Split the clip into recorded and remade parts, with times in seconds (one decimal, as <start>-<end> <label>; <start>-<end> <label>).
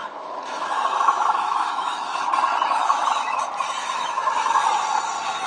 0.0-2.3 remade; 2.3-2.8 recorded; 2.8-3.4 remade; 3.4-3.8 recorded; 3.8-4.7 remade; 4.7-5.5 recorded